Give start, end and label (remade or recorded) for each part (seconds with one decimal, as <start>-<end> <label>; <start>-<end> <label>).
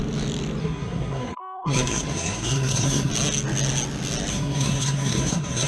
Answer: 0.0-0.6 recorded; 0.6-3.1 remade; 3.1-4.3 recorded; 4.3-5.7 remade